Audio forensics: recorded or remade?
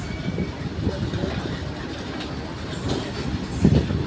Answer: recorded